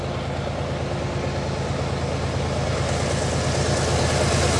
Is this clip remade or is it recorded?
recorded